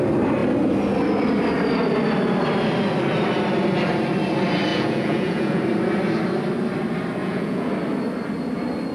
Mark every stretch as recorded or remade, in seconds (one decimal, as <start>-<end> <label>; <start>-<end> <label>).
0.0-4.7 recorded; 4.7-5.6 remade; 5.6-7.2 recorded; 7.2-7.7 remade; 7.7-8.9 recorded

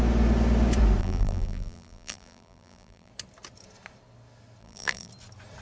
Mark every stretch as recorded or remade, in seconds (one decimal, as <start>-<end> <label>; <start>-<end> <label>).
0.0-1.0 recorded; 1.0-3.1 remade; 3.1-4.6 recorded; 4.6-5.1 remade; 5.1-5.6 recorded

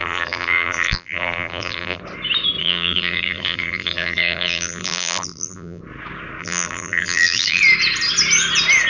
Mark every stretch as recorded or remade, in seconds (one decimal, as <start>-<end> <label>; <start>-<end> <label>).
0.0-2.0 remade; 2.0-2.6 recorded; 2.6-5.8 remade; 5.8-6.4 recorded; 6.4-7.6 remade; 7.6-8.9 recorded

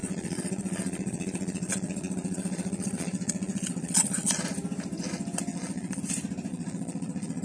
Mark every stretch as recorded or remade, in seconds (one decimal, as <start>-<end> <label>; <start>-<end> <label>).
0.0-4.4 remade; 4.4-5.5 recorded; 5.5-6.0 remade; 6.0-6.5 recorded; 6.5-7.4 remade

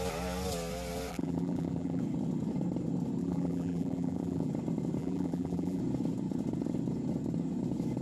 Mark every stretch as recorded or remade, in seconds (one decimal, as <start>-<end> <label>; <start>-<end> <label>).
0.0-1.1 recorded; 1.1-2.0 remade; 2.0-3.2 recorded; 3.2-4.5 remade; 4.5-5.0 recorded; 5.0-5.8 remade; 5.8-8.0 recorded

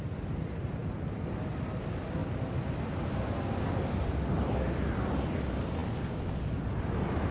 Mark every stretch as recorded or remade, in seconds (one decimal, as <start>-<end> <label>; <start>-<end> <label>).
0.0-7.3 recorded